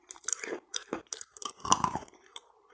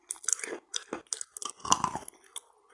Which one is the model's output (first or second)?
first